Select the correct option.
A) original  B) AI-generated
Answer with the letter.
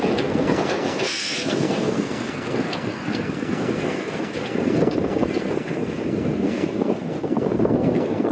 B